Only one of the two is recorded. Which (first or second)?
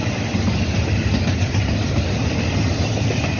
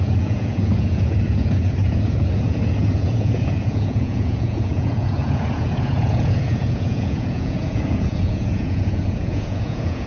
first